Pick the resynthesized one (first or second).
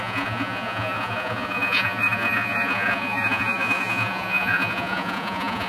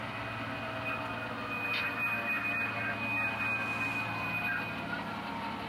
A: first